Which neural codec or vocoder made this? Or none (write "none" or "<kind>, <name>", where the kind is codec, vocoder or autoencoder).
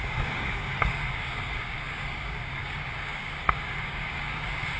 codec, DAC